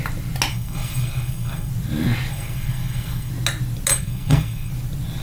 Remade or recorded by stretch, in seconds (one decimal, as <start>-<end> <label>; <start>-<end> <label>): 0.0-0.5 recorded; 0.5-1.7 remade; 1.7-2.3 recorded; 2.3-3.3 remade; 3.3-3.9 recorded; 3.9-4.7 remade; 4.7-5.2 recorded